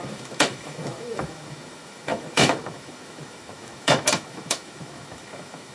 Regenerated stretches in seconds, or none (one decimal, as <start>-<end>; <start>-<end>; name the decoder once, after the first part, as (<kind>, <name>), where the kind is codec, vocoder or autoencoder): 0.0-5.7 (autoencoder, DAC-VAE)